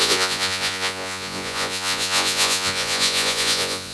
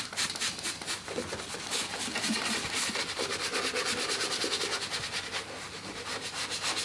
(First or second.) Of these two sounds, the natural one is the second